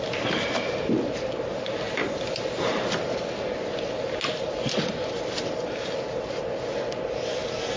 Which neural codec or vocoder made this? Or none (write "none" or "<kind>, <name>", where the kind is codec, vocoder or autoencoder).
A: none